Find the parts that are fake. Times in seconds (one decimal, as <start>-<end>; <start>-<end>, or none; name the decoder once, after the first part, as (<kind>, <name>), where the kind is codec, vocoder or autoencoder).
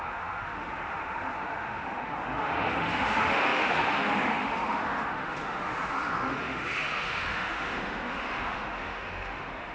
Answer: 0.0-9.7 (autoencoder, DAC-VAE)